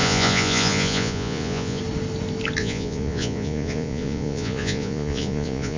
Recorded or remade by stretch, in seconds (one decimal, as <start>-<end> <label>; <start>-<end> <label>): 0.0-1.8 remade; 1.8-2.6 recorded; 2.6-5.8 remade